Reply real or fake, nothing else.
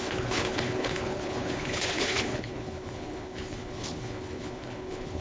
fake